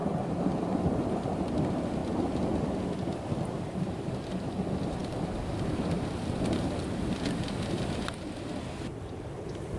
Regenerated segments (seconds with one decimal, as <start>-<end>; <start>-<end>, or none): none